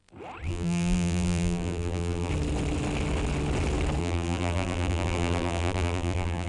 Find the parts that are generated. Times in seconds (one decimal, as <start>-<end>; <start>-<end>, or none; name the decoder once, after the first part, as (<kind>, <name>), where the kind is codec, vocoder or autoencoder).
0.5-2.3 (vocoder, BigVGAN v2); 4.0-6.5

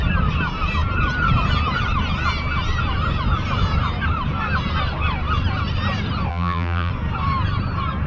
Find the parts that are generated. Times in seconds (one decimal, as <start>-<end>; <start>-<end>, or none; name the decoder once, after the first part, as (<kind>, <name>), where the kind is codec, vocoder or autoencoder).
6.3-6.9 (vocoder, BigVGAN v2)

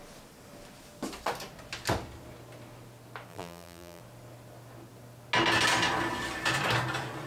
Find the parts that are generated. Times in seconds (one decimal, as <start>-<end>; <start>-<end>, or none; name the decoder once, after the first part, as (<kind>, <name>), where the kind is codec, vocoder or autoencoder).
3.3-4.0 (vocoder, BigVGAN v2)

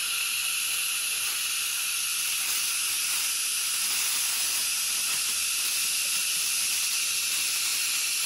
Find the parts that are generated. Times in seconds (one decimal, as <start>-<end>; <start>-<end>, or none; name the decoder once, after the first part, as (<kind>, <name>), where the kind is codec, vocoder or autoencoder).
none

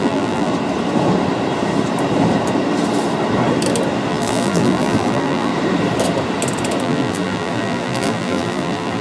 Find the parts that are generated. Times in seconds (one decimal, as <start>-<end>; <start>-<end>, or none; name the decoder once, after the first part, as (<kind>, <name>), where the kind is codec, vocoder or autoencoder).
0.0-0.5 (vocoder, BigVGAN v2); 4.1-5.5; 6.8-9.0

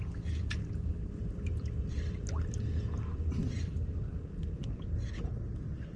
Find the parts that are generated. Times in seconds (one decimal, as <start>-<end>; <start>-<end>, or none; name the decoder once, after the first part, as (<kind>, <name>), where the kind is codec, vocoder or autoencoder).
3.4-4.0 (vocoder, BigVGAN v2)